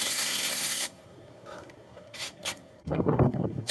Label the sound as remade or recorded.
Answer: remade